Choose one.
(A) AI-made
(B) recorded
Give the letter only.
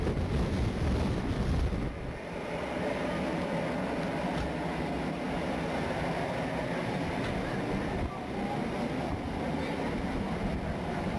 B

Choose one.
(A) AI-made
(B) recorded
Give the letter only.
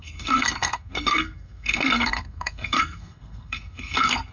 A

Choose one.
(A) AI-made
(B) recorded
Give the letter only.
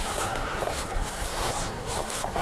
A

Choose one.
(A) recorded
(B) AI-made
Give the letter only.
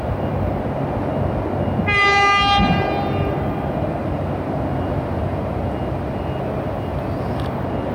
A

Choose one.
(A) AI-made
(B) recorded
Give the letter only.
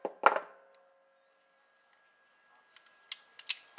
B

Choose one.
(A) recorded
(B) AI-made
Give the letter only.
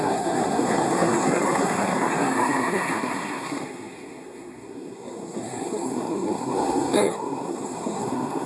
B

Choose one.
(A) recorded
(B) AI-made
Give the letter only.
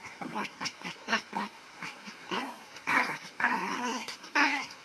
B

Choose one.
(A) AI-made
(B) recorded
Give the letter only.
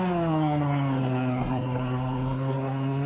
A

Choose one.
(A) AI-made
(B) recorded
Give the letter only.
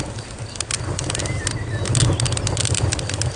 B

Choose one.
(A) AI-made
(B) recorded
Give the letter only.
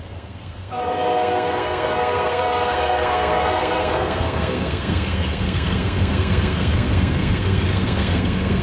A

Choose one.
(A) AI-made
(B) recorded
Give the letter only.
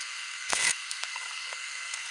A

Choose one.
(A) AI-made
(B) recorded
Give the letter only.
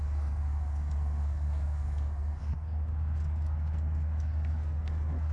A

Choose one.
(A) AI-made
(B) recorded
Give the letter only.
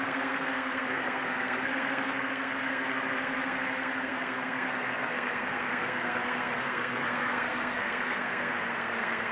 A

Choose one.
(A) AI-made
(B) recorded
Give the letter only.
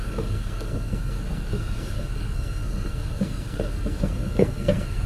A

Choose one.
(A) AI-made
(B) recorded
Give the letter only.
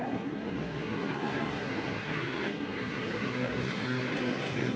A